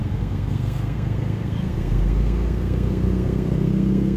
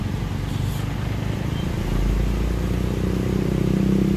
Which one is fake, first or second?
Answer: first